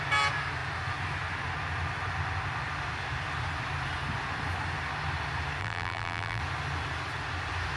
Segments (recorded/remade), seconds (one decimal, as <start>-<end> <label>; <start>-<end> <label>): 0.0-5.6 recorded; 5.6-6.4 remade; 6.4-7.8 recorded